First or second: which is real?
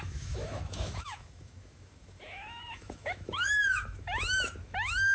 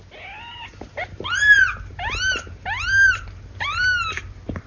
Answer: second